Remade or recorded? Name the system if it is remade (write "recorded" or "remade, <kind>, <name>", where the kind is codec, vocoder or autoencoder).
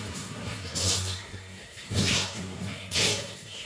remade, codec, SNAC